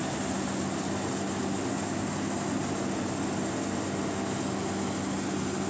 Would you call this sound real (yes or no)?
yes